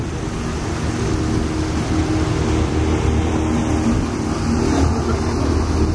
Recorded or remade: recorded